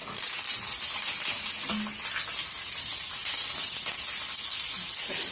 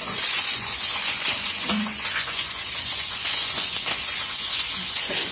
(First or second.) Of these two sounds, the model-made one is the second